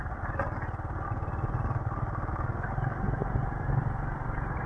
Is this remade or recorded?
recorded